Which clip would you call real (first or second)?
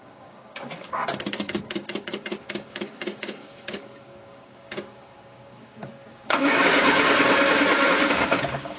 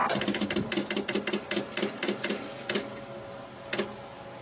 second